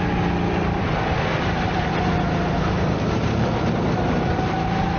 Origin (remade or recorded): recorded